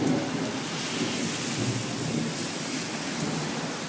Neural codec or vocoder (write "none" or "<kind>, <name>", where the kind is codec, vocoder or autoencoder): none